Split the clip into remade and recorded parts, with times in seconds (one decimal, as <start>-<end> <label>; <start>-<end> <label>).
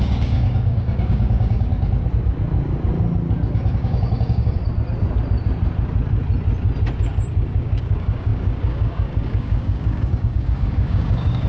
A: 0.0-1.7 remade; 1.7-3.7 recorded; 3.7-4.6 remade; 4.6-7.6 recorded; 7.6-11.5 remade